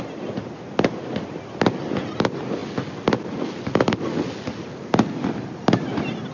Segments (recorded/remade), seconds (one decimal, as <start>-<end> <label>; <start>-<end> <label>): 0.0-6.3 recorded